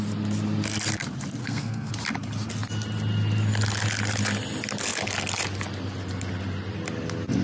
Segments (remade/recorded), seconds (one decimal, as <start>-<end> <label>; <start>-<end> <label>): 0.0-1.4 recorded; 1.4-1.9 remade; 1.9-7.4 recorded